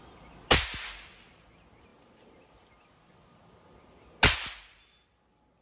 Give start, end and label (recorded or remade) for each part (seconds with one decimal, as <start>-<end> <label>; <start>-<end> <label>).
0.0-5.6 recorded